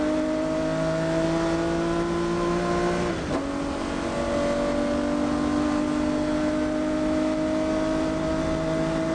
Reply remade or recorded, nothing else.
recorded